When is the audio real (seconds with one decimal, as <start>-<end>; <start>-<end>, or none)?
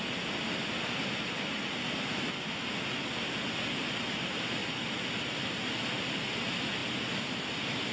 0.0-4.6; 6.2-7.9